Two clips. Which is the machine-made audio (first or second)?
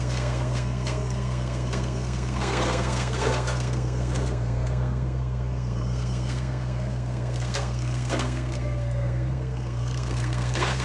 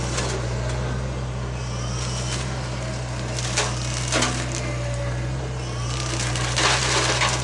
first